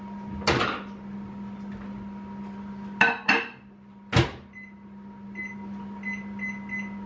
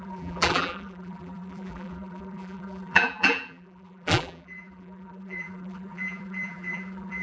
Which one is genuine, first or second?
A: first